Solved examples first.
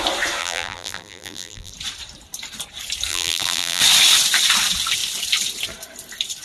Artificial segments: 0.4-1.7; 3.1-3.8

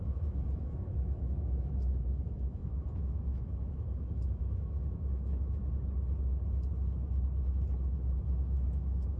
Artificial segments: 0.0-5.6; 8.2-9.2

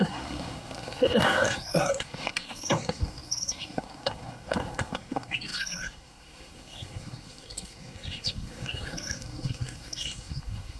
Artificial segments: 0.0-10.8

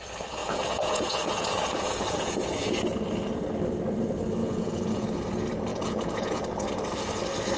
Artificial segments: 0.4-2.8; 4.4-5.0; 5.7-6.4